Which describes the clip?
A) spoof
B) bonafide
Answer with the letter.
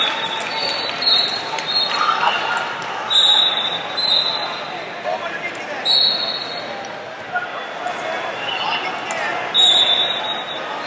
B